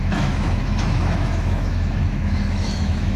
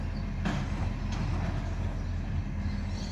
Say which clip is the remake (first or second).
first